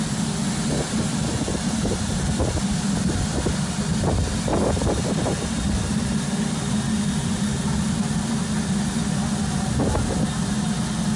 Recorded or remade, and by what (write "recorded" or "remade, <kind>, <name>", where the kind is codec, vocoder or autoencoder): recorded